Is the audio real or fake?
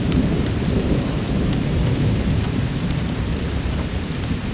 fake